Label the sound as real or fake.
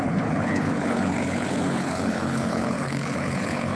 fake